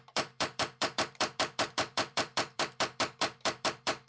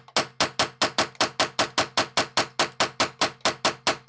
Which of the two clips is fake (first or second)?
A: first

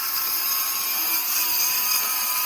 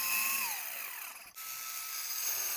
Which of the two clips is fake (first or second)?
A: first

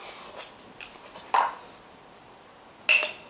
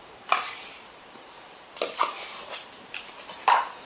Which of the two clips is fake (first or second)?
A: second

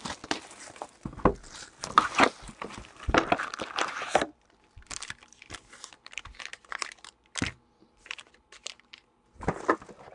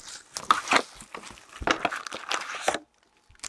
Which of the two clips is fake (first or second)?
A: first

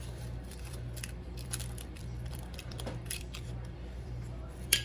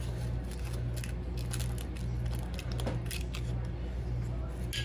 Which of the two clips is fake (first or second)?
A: first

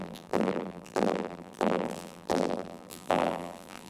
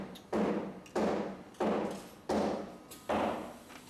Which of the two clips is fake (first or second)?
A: first